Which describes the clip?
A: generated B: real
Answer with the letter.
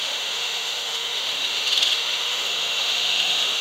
A